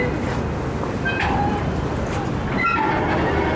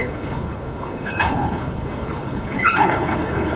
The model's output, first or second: second